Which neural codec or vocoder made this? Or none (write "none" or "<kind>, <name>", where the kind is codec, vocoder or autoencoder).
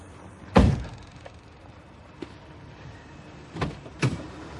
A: vocoder, BigVGAN v2